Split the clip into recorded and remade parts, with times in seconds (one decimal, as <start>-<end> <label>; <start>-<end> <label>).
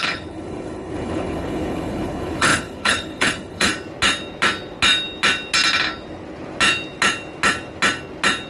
0.0-3.7 remade; 3.7-8.5 recorded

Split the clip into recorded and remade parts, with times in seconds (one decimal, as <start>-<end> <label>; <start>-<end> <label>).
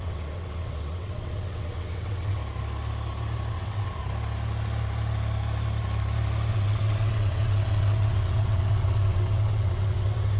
0.0-2.4 remade; 2.4-3.5 recorded; 3.5-4.0 remade; 4.0-6.5 recorded; 6.5-10.4 remade